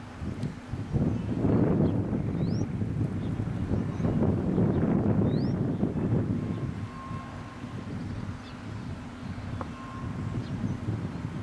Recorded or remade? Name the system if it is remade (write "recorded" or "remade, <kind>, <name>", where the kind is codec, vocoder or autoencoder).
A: recorded